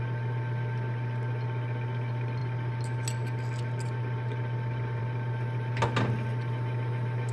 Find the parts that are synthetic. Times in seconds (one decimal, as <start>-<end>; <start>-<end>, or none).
none